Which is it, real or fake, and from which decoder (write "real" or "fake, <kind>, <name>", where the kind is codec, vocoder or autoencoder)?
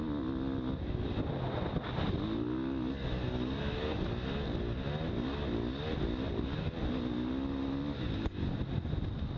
real